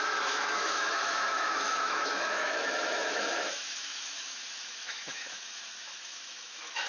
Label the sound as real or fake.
fake